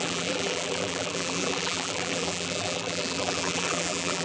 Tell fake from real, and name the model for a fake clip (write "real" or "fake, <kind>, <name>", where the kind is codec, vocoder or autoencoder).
fake, vocoder, BigVGAN v2